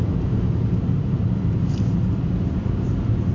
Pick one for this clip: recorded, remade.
recorded